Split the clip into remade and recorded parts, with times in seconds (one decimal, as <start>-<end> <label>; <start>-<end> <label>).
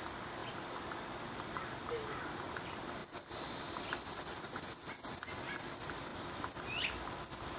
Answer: 0.0-7.6 remade